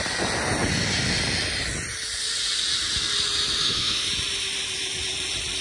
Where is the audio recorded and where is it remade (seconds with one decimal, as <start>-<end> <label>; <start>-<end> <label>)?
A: 0.0-3.6 recorded; 3.6-4.1 remade; 4.1-5.6 recorded